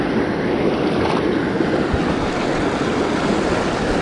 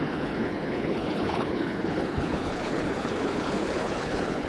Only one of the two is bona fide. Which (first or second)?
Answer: first